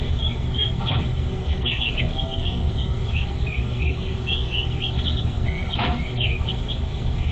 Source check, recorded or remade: remade